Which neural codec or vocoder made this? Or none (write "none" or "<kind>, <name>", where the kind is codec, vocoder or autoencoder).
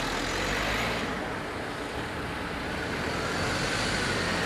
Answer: none